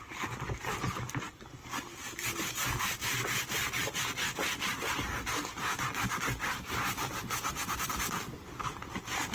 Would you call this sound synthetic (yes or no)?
yes